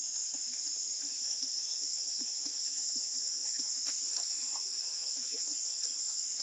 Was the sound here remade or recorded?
remade